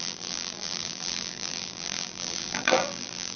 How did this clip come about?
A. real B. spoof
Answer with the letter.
B